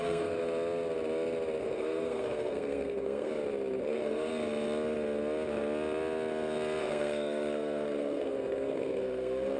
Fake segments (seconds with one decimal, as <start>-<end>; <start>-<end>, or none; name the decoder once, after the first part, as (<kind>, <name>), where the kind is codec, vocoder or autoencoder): 0.0-0.4 (codec, SNAC); 1.6-3.3; 3.8-4.3; 6.8-9.6